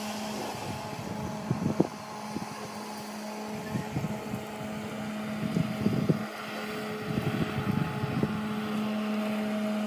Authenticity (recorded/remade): recorded